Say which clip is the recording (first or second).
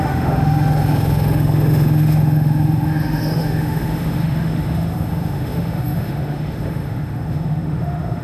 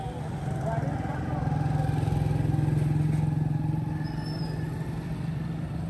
second